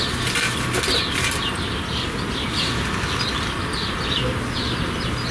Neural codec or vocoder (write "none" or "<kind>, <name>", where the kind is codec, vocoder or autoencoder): none